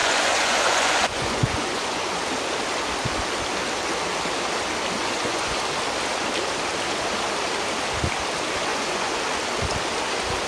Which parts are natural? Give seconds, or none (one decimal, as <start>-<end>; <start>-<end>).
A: 2.2-5.0; 5.6-8.7; 9.2-10.5